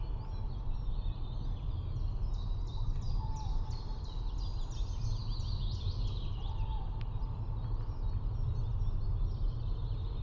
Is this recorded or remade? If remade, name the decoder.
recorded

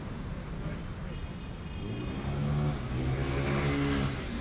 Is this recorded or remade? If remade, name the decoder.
recorded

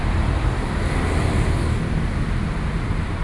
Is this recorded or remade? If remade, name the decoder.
recorded